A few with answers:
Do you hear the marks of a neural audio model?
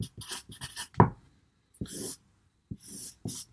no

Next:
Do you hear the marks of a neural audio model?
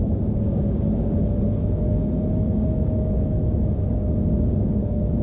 yes